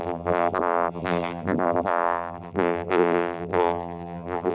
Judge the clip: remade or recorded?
remade